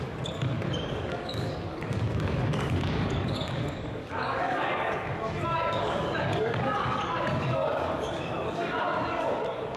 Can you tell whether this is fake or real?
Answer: fake